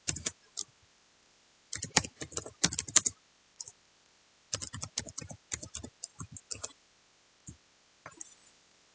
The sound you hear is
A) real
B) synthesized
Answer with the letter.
A